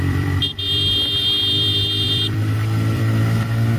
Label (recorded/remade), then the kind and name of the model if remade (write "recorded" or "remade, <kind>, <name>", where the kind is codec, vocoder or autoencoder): remade, vocoder, BigVGAN v2